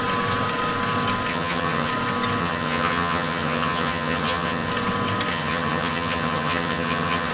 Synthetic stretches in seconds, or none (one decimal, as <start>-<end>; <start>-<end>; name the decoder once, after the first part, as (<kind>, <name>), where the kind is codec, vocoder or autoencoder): 1.3-1.9 (vocoder, HiFi-GAN); 2.4-4.7; 5.3-7.3